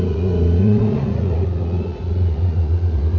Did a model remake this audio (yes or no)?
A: yes